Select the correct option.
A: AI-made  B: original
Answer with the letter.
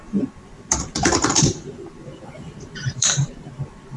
A